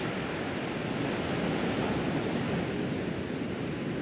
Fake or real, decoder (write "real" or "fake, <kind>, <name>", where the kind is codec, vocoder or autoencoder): real